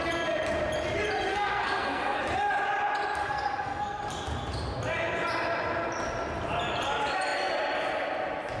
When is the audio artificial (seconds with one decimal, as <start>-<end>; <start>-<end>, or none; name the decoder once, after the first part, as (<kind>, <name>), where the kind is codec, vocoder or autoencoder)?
1.3-2.2 (codec, SNAC); 3.2-4.0